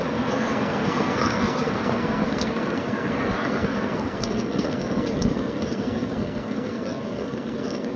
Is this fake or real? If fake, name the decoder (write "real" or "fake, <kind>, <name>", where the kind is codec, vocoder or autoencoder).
fake, codec, SNAC